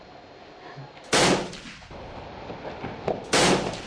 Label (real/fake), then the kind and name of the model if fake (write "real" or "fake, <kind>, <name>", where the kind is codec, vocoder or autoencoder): real